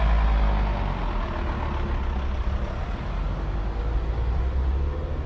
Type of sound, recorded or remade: recorded